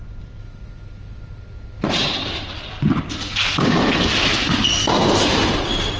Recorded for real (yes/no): no